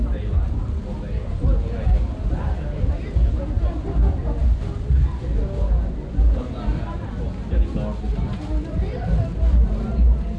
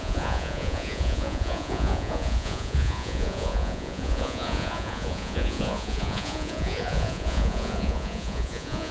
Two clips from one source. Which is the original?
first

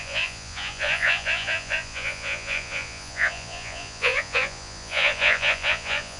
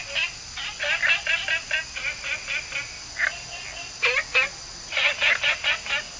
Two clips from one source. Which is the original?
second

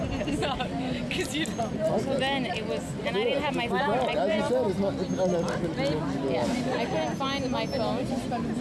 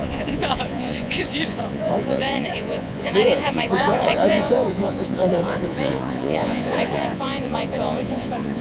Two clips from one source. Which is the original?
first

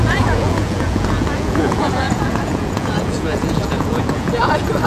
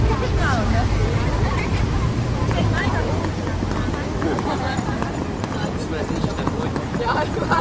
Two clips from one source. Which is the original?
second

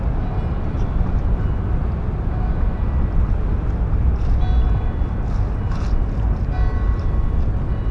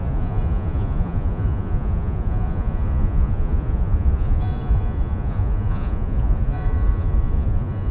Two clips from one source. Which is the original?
first